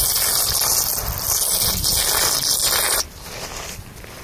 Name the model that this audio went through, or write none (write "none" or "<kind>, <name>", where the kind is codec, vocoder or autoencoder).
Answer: none